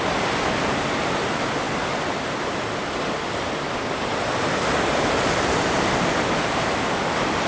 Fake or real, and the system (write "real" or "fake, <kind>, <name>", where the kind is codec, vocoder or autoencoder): real